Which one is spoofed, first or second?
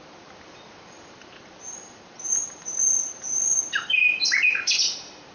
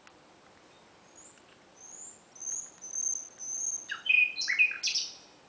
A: first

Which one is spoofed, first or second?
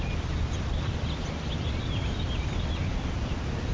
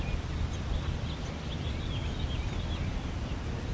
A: first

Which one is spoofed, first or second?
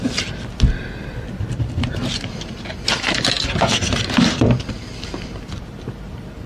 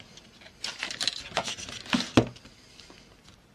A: first